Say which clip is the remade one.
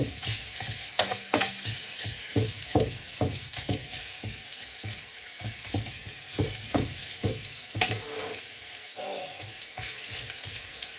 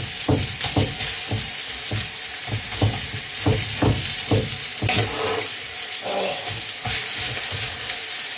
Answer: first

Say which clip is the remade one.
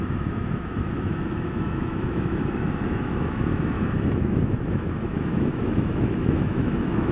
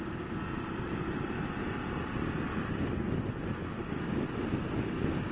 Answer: first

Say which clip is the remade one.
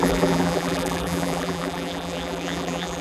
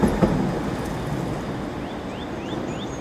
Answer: first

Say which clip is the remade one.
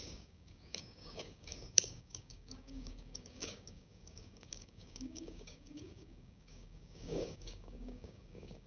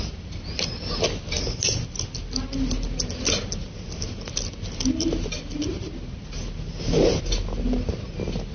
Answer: first